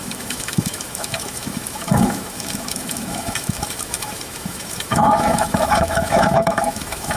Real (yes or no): no